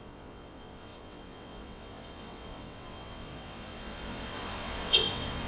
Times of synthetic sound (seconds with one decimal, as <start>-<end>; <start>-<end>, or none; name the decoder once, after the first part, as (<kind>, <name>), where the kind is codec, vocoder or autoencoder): 0.0-5.5 (vocoder, WaveNeXt)